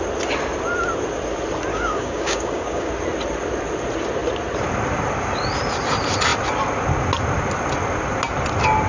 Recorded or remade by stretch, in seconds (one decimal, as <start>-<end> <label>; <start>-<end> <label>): 0.0-1.7 recorded; 1.7-2.9 remade; 2.9-8.9 recorded